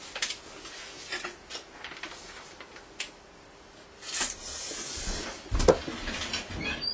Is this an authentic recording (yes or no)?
yes